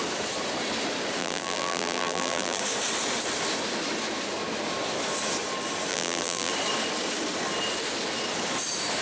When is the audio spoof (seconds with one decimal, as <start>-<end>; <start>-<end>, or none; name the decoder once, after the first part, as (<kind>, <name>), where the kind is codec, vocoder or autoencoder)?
1.2-2.6 (vocoder, BigVGAN v2); 5.9-6.5